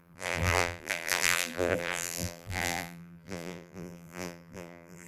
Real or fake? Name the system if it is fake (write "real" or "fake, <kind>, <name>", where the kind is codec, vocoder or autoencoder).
fake, vocoder, BigVGAN v2